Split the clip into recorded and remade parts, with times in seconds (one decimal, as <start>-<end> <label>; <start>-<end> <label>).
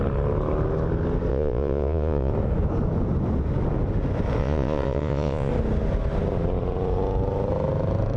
0.0-1.3 recorded; 1.3-2.3 remade; 2.3-4.4 recorded; 4.4-5.5 remade; 5.5-8.2 recorded